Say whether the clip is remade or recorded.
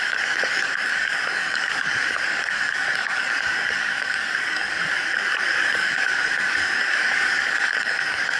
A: remade